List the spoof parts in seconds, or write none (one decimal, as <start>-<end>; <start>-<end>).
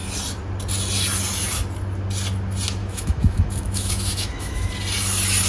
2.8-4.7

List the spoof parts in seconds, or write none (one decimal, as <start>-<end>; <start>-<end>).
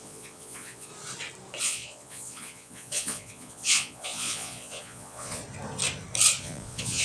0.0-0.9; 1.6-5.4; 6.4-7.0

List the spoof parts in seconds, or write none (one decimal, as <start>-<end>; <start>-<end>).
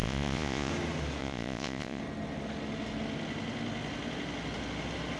0.0-0.7; 1.2-2.0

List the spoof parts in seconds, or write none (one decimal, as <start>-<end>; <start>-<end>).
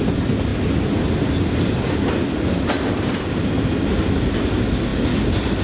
none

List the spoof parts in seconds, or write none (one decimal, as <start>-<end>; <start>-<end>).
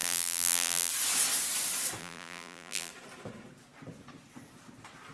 0.0-0.9; 2.0-2.9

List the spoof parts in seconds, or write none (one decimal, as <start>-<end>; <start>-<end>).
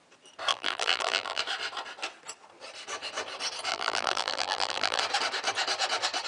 0.5-1.4; 3.7-5.0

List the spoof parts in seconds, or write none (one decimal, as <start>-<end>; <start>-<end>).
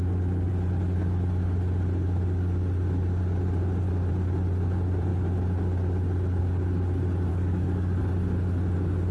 7.3-8.0